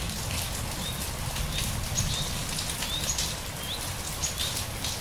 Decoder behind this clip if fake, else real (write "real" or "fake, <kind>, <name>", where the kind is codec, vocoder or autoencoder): real